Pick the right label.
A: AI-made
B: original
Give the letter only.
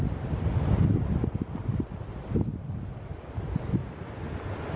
B